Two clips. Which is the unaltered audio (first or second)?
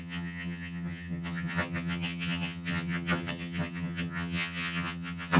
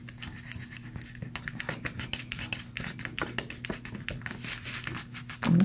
second